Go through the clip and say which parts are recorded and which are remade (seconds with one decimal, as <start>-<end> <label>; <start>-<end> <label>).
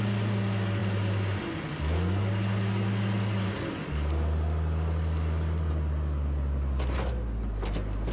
0.0-8.1 recorded